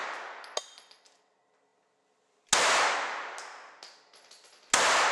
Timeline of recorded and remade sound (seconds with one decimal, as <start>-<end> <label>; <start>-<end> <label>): 0.0-5.1 recorded